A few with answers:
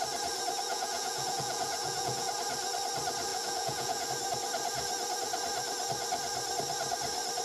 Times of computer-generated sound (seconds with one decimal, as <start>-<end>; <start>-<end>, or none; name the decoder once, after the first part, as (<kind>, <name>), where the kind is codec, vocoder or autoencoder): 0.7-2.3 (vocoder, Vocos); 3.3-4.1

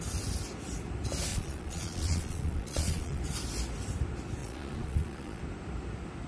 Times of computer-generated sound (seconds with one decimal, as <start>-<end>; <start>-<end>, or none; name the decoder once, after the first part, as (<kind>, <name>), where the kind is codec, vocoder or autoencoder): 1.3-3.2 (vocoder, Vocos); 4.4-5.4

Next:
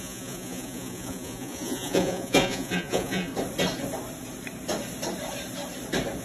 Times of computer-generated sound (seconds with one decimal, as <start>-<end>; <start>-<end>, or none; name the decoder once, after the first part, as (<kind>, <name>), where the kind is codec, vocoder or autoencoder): 0.0-3.3 (vocoder, Vocos)

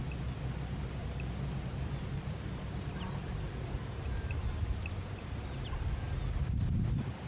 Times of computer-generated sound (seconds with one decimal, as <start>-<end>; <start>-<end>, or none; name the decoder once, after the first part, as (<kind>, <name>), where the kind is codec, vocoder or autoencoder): none